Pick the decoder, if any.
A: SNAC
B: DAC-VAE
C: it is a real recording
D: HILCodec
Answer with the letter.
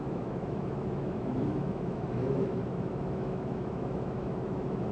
B